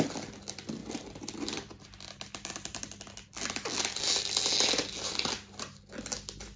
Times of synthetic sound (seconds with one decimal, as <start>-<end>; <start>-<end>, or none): none